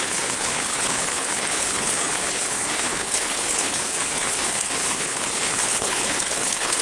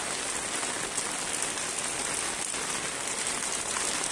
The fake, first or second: first